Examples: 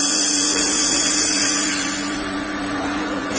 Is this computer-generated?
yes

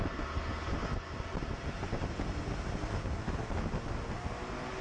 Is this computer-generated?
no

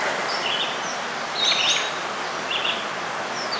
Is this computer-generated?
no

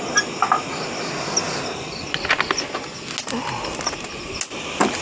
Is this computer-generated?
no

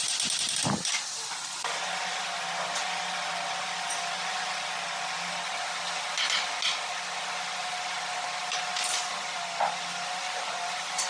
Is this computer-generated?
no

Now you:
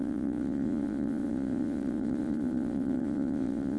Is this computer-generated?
yes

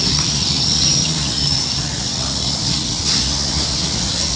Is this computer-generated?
yes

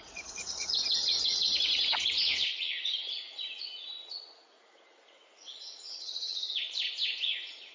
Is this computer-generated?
yes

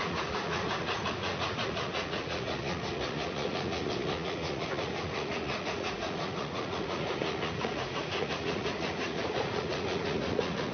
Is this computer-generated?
yes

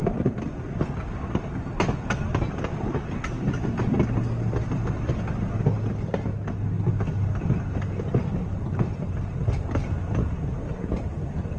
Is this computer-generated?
no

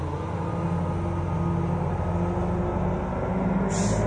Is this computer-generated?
no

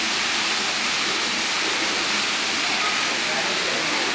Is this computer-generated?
no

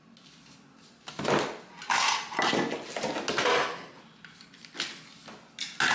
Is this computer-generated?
no